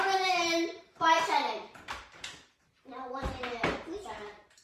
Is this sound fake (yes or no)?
yes